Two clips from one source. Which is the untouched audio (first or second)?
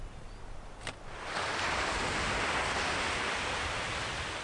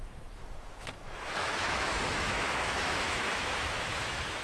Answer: first